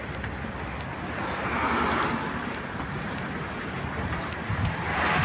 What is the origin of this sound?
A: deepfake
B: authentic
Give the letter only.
B